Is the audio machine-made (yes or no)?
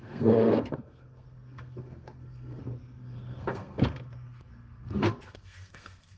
yes